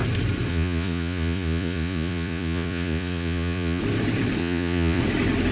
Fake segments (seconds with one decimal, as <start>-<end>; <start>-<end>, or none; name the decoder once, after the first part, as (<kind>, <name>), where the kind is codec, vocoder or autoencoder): 0.5-3.8 (vocoder, Vocos); 4.4-5.0